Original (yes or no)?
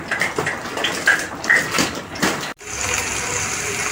yes